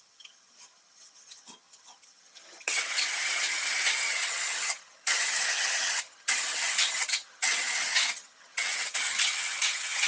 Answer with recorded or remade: remade